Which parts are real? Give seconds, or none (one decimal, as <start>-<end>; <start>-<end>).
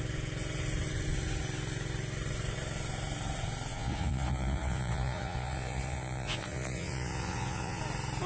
0.0-3.7; 7.8-8.3